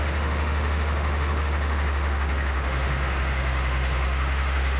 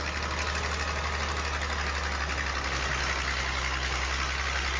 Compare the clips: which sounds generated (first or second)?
first